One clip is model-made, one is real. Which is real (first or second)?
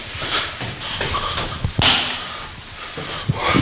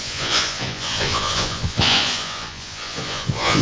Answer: first